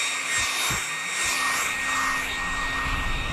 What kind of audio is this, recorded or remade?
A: recorded